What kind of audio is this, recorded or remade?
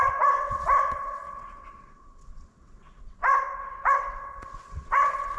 remade